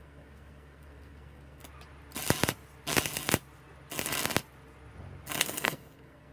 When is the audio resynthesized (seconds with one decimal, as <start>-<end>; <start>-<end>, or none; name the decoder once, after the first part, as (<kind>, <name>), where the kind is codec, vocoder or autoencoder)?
0.0-1.6 (codec, SNAC); 5.4-6.3